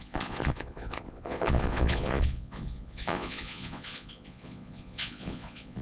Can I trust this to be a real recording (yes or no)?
no